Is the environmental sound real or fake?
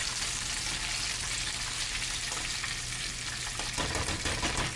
real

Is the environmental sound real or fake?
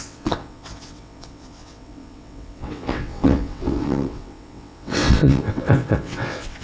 fake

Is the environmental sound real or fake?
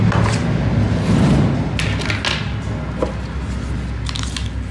real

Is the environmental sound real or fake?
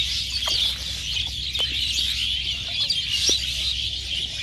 real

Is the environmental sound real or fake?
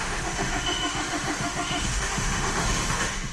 fake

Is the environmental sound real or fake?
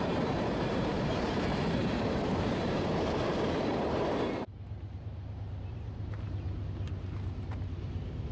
fake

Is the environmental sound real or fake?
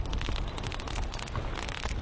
real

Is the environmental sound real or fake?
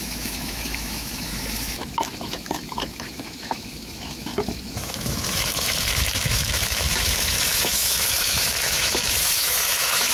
fake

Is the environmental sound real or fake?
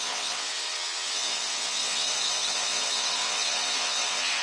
fake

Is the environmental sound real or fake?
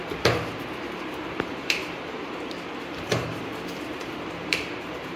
fake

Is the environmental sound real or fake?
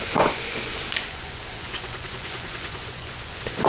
fake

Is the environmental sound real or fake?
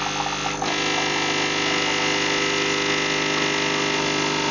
real